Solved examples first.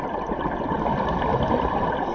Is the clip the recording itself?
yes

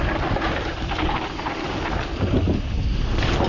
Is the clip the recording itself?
yes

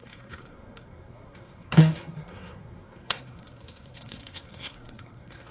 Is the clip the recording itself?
no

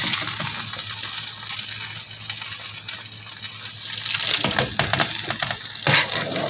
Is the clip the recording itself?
yes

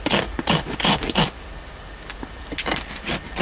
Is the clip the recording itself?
yes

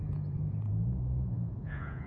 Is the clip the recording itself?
no